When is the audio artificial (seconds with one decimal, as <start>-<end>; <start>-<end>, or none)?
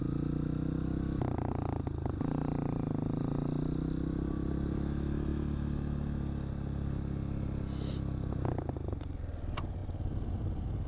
9.8-10.9